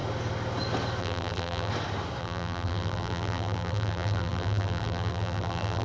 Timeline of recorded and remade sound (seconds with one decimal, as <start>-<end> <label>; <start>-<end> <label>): 0.0-1.0 recorded; 1.0-1.7 remade; 1.7-2.2 recorded; 2.2-5.8 remade